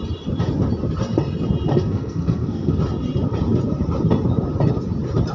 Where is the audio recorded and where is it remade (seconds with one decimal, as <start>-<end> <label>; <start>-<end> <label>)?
0.0-1.7 recorded; 1.7-2.8 remade; 2.8-5.3 recorded